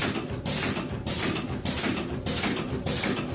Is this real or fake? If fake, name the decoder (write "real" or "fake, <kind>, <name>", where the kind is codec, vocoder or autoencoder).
real